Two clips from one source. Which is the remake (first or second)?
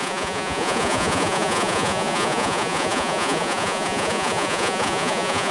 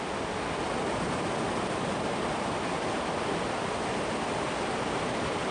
first